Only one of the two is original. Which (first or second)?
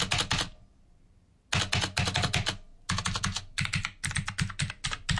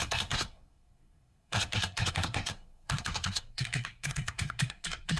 first